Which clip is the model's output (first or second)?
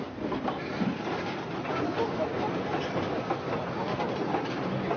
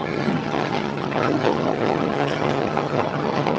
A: second